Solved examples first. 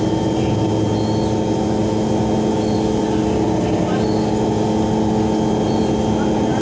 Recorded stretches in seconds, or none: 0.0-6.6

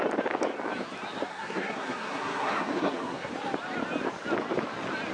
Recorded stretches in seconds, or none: 0.0-1.3; 3.3-5.1

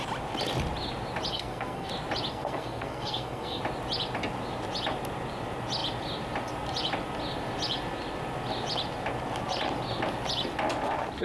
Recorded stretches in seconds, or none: 0.0-1.3; 1.9-2.3; 3.6-11.2

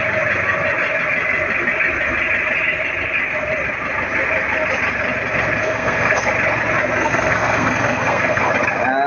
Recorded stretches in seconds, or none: 0.0-5.6; 6.3-7.0; 8.5-9.1

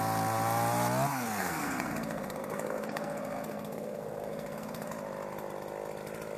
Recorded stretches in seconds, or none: 0.0-1.1; 4.9-6.4

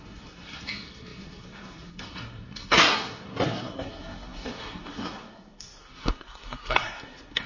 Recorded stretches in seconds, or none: none

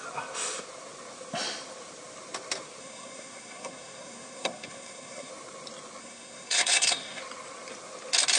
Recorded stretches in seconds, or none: 0.0-2.8; 5.3-6.0; 7.2-8.4